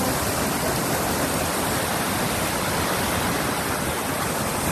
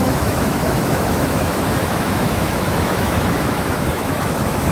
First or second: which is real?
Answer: first